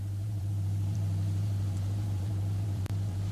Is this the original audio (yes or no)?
no